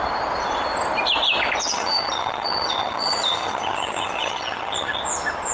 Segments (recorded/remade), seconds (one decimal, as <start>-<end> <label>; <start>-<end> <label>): 0.0-1.7 recorded; 1.7-5.0 remade; 5.0-5.5 recorded